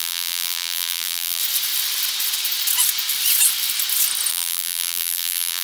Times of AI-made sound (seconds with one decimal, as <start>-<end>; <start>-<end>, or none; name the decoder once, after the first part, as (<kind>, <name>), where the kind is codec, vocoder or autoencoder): 0.0-1.4 (vocoder, BigVGAN v2); 4.3-5.6